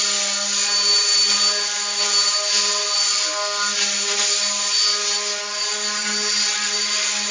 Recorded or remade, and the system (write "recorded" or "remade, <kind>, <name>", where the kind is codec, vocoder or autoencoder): recorded